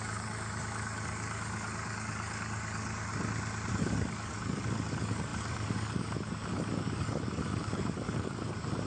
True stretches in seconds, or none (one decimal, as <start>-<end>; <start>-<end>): 3.1-3.7